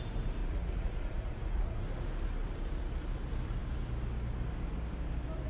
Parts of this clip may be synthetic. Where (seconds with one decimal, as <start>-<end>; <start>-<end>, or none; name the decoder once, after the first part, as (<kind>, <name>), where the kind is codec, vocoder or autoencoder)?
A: 0.4-1.8 (vocoder, Vocos)